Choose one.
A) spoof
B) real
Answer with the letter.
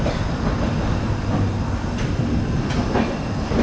B